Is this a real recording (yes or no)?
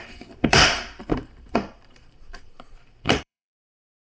no